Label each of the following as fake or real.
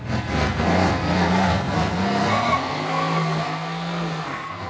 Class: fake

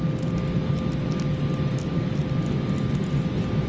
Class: real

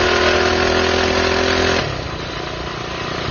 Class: real